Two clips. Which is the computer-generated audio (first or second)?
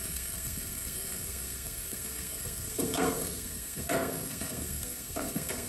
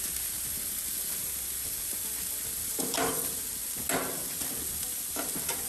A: first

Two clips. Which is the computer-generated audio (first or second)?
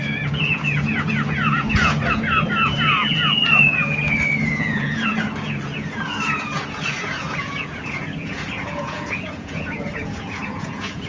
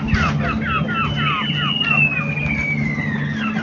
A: first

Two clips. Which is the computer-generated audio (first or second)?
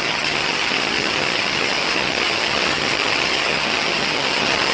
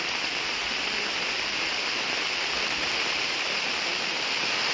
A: first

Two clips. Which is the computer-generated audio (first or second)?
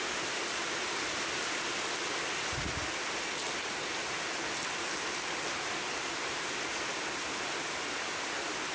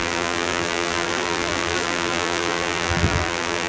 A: second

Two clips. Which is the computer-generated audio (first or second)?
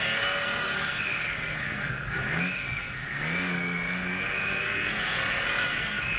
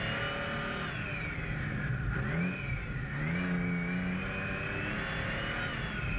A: first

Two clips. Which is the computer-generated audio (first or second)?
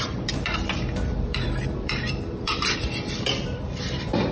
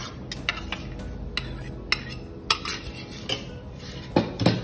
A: first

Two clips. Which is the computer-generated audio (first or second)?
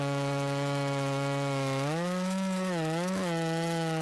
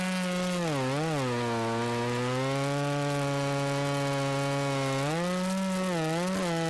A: first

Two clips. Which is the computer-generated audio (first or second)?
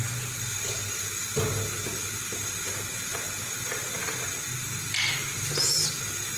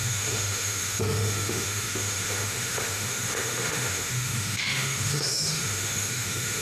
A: second